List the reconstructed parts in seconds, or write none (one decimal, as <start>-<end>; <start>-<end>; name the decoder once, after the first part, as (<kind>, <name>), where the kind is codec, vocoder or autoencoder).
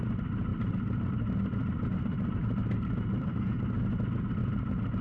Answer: 0.5-3.5 (vocoder, BigVGAN v2); 4.4-5.0